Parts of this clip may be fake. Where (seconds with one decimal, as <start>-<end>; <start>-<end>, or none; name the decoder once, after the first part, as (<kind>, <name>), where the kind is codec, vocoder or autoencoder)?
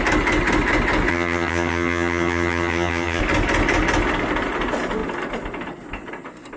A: 1.1-3.2 (vocoder, HiFi-GAN)